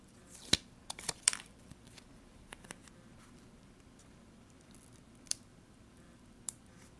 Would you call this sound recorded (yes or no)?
no